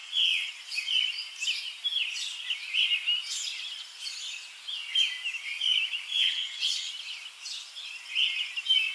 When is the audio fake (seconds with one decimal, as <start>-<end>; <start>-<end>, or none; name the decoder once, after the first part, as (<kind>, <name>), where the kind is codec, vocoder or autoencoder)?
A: 0.0-0.5 (vocoder, WaveNeXt); 6.1-6.9